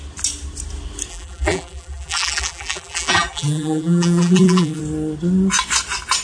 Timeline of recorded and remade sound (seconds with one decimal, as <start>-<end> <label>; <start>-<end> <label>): 0.0-1.1 recorded; 1.1-4.8 remade; 4.8-6.2 recorded